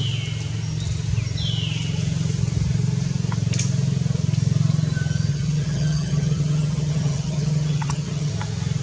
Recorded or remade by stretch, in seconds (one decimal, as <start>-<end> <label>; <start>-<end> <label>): 0.0-5.3 recorded; 5.3-8.3 remade; 8.3-8.8 recorded